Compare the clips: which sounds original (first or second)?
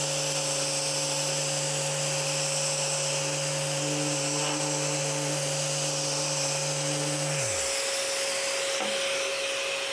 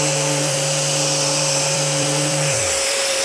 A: first